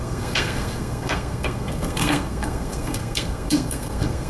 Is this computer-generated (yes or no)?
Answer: yes